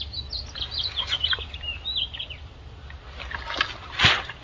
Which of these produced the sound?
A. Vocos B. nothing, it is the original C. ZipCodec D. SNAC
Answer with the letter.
B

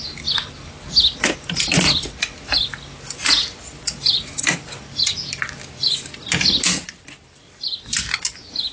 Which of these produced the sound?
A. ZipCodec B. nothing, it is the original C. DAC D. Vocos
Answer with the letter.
B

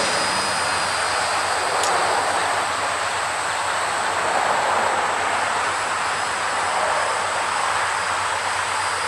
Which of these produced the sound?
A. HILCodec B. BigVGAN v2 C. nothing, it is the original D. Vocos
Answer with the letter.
C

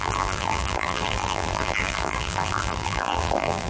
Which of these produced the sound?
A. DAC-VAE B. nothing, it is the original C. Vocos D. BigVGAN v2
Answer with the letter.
D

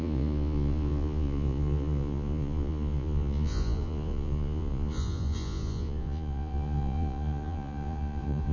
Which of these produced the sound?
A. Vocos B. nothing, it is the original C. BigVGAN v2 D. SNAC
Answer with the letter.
A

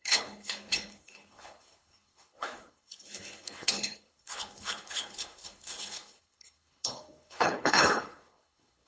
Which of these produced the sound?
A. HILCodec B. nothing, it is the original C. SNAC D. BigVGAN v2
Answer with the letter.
A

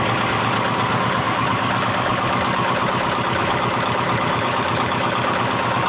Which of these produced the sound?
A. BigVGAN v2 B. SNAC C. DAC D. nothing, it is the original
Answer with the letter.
C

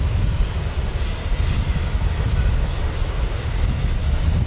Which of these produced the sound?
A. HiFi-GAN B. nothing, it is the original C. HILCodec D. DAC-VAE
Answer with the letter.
B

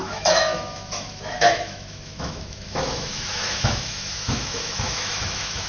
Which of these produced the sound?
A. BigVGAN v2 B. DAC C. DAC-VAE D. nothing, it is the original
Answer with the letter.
C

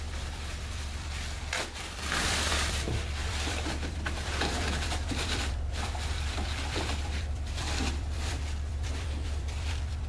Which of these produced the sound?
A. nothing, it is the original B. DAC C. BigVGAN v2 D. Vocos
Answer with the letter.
C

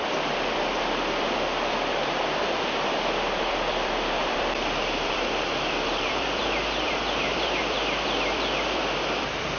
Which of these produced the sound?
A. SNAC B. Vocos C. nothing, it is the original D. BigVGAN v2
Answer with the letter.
D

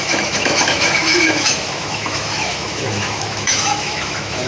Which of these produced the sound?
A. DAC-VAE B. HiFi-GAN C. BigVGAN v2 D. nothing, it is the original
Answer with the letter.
A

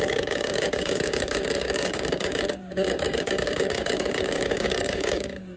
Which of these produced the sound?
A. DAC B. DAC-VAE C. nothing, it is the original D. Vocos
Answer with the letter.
A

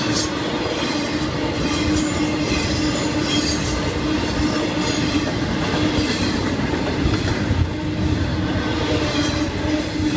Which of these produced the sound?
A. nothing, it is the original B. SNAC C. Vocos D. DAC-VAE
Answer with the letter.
A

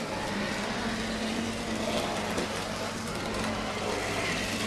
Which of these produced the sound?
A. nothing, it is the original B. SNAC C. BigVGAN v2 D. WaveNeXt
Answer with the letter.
A